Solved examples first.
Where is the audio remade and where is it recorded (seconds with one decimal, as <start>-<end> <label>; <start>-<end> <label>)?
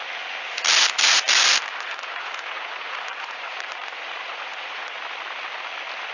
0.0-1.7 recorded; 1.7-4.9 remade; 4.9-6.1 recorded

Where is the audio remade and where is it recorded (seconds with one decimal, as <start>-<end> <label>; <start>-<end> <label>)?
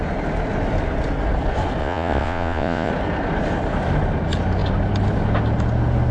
0.0-1.8 recorded; 1.8-2.9 remade; 2.9-6.1 recorded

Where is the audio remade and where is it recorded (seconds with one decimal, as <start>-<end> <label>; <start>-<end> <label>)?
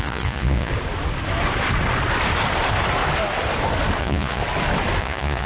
0.0-0.7 remade; 0.7-4.0 recorded; 4.0-4.4 remade; 4.4-5.0 recorded; 5.0-5.5 remade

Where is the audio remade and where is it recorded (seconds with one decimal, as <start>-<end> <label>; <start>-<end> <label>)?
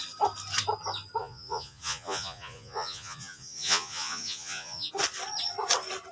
0.0-1.2 recorded; 1.2-4.9 remade; 4.9-6.1 recorded